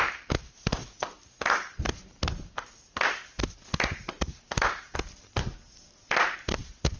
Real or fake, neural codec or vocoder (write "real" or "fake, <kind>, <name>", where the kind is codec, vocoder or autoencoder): fake, vocoder, BigVGAN v2